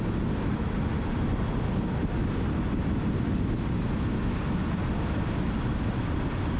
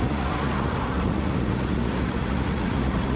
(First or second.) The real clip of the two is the first